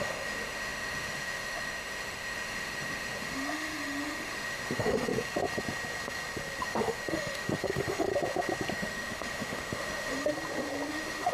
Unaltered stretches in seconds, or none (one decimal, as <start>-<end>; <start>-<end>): 5.1-6.6; 8.1-8.7; 10.3-10.9